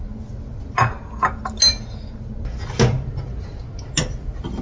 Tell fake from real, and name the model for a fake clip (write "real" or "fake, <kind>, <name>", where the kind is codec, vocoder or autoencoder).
real